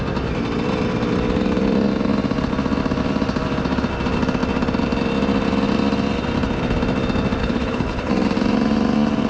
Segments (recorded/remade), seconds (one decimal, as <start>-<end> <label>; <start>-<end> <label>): 0.0-7.4 recorded; 7.4-8.1 remade; 8.1-9.3 recorded